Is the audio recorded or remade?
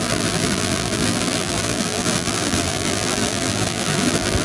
remade